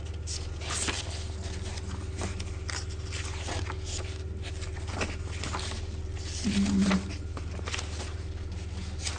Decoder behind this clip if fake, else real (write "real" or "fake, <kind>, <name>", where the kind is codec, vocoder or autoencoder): real